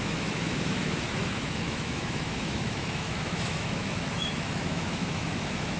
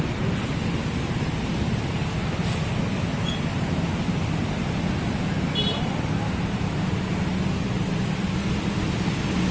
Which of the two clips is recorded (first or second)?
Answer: second